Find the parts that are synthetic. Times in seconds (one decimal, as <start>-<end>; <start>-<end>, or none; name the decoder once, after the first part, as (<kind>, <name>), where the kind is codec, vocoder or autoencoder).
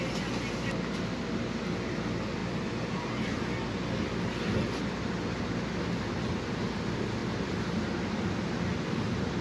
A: none